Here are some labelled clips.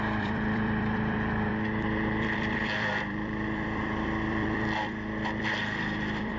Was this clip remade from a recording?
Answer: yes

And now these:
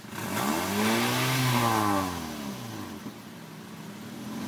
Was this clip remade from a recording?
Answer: no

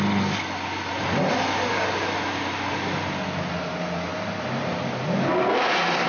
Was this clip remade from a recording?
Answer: no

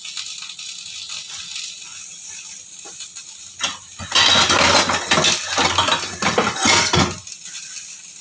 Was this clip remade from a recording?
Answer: no